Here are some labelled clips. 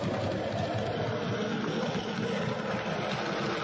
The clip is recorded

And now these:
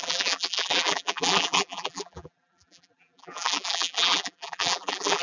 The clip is remade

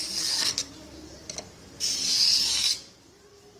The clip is recorded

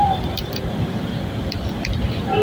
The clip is remade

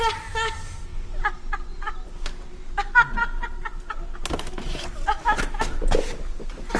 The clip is recorded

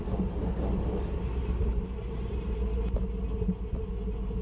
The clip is recorded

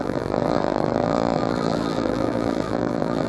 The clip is remade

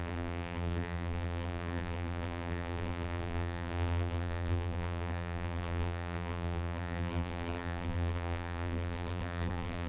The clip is remade